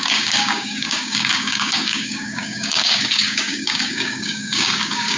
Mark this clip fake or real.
fake